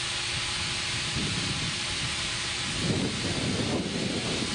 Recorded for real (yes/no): yes